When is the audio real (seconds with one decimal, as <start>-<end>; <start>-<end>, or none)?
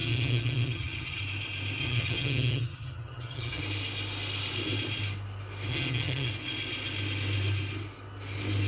1.2-1.8; 3.6-5.7; 6.3-8.7